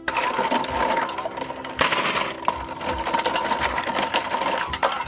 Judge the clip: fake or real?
real